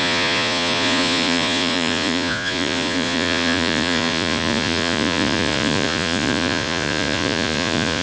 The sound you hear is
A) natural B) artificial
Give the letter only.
B